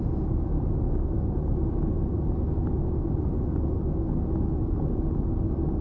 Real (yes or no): yes